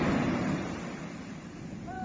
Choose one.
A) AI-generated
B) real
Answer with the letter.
A